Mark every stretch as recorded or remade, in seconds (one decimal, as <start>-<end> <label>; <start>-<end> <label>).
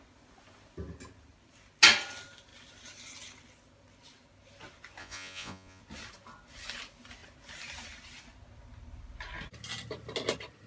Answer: 0.0-5.0 recorded; 5.0-5.8 remade; 5.8-10.7 recorded